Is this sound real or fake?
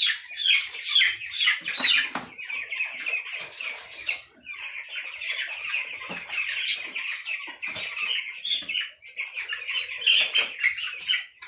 real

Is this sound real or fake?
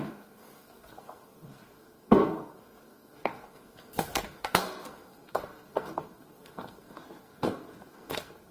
fake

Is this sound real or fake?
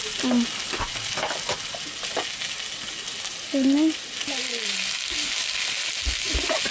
real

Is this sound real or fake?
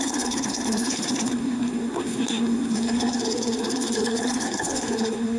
fake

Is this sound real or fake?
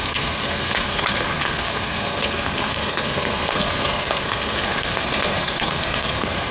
fake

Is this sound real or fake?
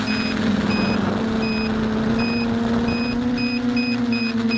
real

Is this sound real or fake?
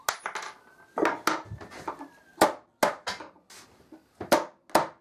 real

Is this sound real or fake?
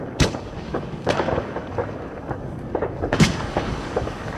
fake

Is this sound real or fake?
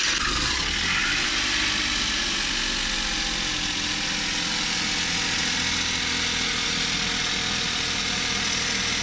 real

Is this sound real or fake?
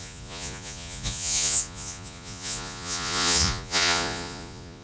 fake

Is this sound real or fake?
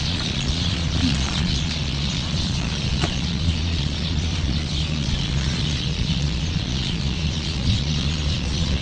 fake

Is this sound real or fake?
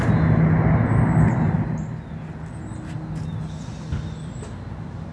real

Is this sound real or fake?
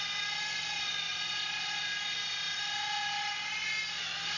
real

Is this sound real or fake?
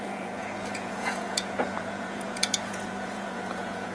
fake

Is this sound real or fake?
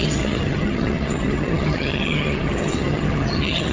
fake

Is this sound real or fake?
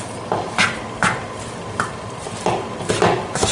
real